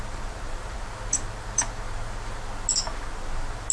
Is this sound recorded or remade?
recorded